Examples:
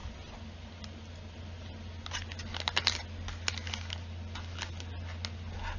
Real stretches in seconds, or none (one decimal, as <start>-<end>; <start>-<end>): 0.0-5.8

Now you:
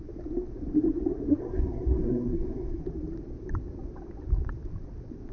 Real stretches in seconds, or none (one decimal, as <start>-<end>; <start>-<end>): 0.0-1.3; 2.8-5.3

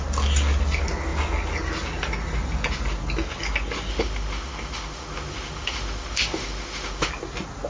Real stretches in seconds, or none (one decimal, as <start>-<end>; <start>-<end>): 0.0-3.9; 7.1-7.7

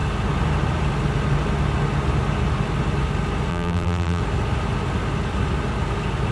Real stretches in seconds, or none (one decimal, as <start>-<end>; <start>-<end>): 0.0-3.5; 4.2-6.3

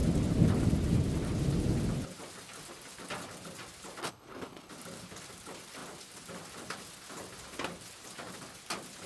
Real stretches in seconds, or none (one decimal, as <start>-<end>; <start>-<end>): 0.0-4.0; 4.7-9.1